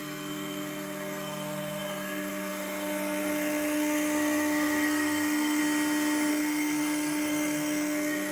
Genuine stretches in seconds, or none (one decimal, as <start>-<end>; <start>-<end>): 5.6-6.3